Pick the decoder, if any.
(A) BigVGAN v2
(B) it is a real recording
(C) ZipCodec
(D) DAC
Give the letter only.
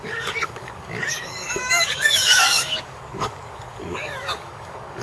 D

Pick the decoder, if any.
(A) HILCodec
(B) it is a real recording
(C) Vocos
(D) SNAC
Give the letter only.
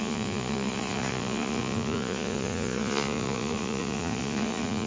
C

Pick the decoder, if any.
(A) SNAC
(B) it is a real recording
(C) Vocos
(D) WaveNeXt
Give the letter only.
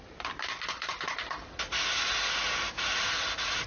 B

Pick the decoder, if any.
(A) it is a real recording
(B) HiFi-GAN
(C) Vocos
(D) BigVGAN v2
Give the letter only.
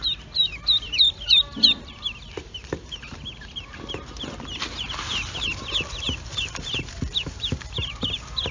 D